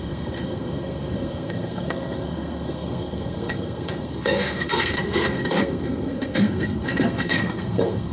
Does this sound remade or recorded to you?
remade